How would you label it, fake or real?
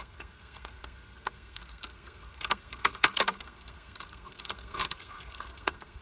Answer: fake